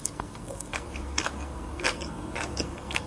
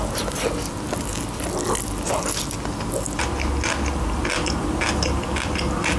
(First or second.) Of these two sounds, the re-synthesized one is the first